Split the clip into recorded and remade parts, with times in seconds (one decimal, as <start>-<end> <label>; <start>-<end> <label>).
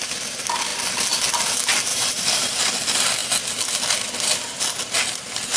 0.0-1.9 recorded; 1.9-2.6 remade; 2.6-5.6 recorded